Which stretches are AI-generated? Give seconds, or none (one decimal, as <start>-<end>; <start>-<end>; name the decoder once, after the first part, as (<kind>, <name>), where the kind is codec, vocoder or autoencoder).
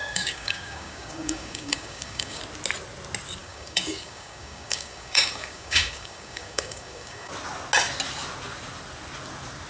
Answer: 0.0-2.4 (codec, DAC); 3.4-7.3